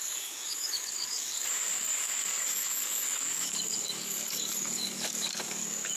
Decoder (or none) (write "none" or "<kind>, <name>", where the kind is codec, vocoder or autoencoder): codec, DAC